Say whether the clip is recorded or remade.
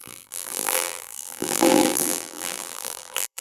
remade